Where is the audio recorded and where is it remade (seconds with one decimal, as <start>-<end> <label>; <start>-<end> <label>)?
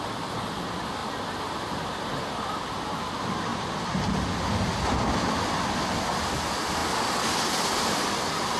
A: 0.0-8.6 recorded